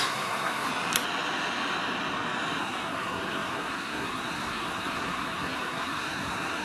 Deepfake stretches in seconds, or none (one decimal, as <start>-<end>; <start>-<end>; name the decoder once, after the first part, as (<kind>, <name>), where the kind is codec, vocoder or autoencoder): 0.0-0.7 (codec, SNAC); 2.6-6.6